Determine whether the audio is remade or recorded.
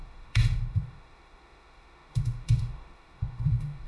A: remade